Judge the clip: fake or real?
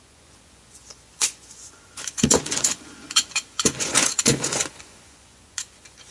fake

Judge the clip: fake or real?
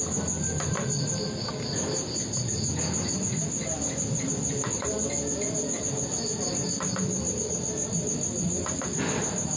real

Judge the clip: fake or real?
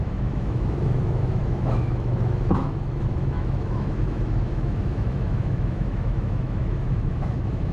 fake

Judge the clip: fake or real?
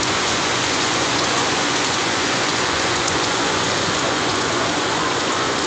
fake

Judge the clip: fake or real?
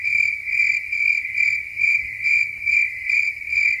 real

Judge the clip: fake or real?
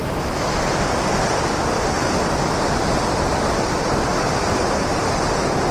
real